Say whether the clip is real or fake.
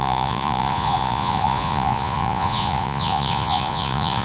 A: fake